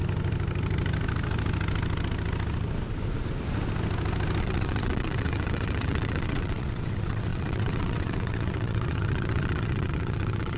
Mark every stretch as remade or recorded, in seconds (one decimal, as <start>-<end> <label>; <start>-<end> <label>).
0.0-4.4 recorded; 4.4-10.6 remade